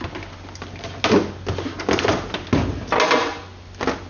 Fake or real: real